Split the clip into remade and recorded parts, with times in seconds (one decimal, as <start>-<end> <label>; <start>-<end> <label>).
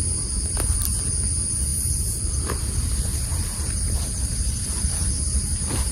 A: 0.0-5.9 remade